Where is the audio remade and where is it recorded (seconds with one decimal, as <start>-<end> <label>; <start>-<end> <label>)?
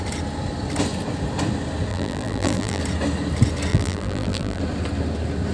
0.0-1.9 recorded; 1.9-2.8 remade; 2.8-3.7 recorded; 3.7-4.6 remade; 4.6-5.5 recorded